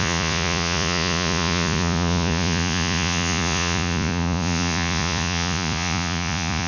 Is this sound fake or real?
fake